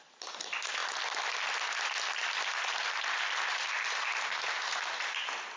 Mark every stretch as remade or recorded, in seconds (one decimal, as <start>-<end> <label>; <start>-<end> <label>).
0.0-5.6 recorded